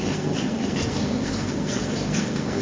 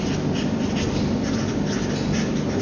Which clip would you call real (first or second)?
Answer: second